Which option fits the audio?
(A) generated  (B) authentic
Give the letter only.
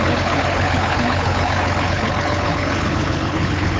A